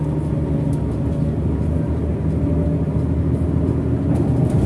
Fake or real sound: real